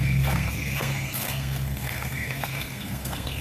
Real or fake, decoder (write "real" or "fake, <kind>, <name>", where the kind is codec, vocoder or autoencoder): fake, codec, SNAC